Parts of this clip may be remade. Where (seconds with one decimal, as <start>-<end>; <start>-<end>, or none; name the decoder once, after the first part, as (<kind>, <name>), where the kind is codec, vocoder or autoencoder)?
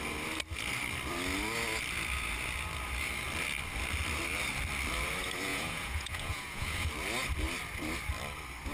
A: 5.5-6.9 (vocoder, Vocos)